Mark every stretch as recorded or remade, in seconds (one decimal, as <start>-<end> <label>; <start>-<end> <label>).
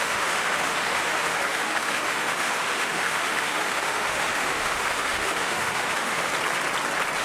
0.0-6.3 remade; 6.3-7.2 recorded